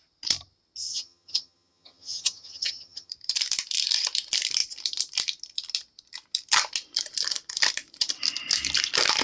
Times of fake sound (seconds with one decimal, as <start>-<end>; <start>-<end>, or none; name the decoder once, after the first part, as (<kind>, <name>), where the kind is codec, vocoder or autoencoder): 0.9-3.1 (vocoder, HiFi-GAN)